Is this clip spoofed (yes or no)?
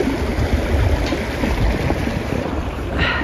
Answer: no